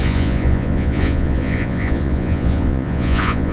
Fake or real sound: fake